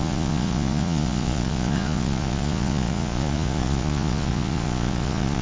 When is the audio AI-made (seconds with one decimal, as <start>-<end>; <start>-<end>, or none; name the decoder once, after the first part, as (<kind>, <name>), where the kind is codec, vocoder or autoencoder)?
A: 0.0-5.4 (vocoder, Vocos)